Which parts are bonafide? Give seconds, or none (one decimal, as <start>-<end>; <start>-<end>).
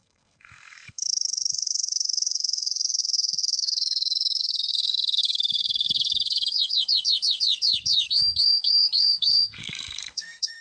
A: none